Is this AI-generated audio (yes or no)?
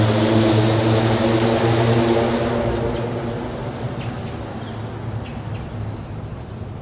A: no